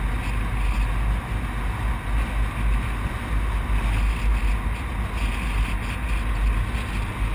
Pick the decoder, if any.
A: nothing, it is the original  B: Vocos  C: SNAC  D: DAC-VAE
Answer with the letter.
A